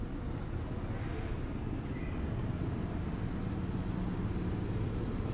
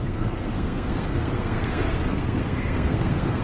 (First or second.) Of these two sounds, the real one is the first